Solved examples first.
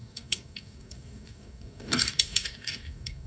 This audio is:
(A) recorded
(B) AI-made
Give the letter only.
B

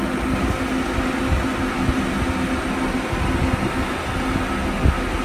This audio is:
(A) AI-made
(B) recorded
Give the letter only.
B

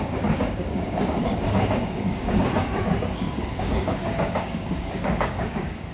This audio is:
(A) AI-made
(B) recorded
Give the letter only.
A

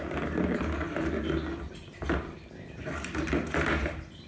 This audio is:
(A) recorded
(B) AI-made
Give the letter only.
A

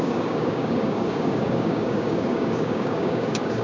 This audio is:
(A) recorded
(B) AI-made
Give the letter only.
B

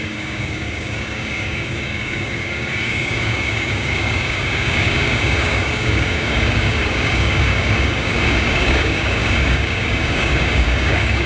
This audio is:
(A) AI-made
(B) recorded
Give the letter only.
A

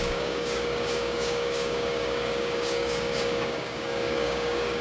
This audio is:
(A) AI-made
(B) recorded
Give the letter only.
A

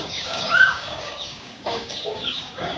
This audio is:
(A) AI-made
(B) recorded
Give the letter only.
A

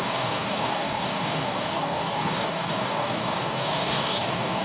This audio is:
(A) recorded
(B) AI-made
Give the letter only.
B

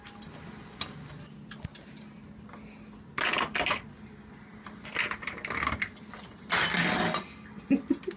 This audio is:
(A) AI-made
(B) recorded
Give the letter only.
B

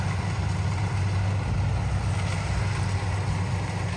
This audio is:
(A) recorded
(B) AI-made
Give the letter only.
A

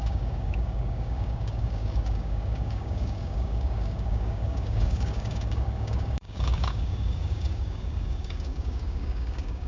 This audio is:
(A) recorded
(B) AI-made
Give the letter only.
B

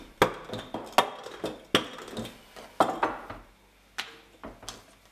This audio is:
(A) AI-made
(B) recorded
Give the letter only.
B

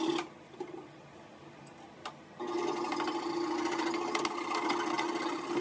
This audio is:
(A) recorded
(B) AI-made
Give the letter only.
A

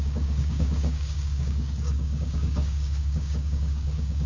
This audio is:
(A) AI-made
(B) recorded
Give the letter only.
A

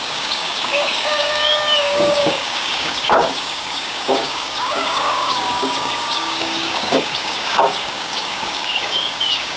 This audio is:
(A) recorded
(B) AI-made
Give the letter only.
B